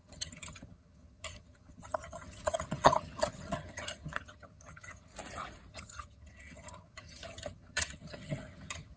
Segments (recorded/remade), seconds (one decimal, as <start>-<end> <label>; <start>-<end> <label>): 0.0-5.1 remade; 5.1-5.7 recorded; 5.7-9.0 remade